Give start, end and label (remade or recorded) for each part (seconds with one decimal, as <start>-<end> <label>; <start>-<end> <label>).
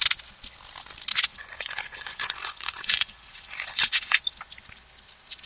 0.0-1.3 recorded; 1.3-4.2 remade; 4.2-5.5 recorded